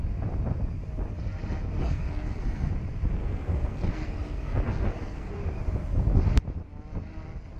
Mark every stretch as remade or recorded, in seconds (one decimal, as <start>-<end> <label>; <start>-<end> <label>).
0.0-1.8 recorded; 1.8-2.7 remade; 2.7-3.2 recorded; 3.2-5.3 remade; 5.3-7.6 recorded